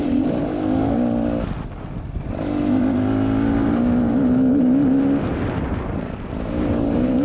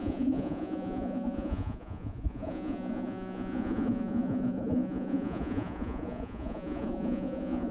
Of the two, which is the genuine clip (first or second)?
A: first